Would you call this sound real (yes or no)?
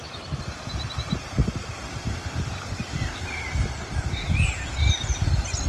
yes